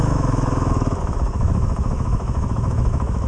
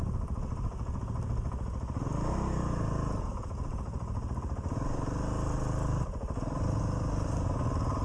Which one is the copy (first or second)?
first